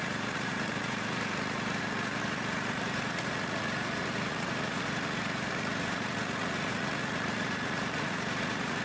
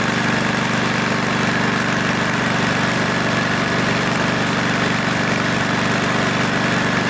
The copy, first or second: first